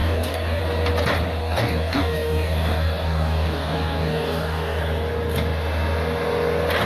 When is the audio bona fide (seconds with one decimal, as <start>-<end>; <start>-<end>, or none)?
0.6-1.4; 4.8-6.9